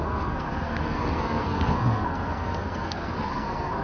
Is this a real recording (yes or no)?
no